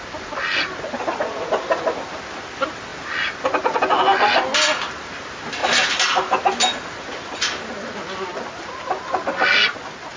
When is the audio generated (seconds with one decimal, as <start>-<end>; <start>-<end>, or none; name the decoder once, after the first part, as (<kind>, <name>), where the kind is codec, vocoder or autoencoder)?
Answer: none